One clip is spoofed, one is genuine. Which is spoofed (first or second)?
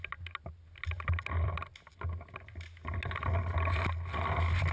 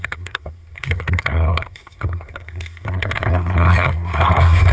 second